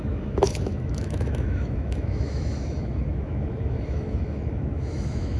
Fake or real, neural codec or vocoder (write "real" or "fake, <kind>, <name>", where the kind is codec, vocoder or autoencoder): fake, autoencoder, DAC-VAE